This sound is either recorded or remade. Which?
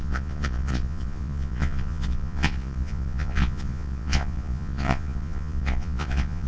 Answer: remade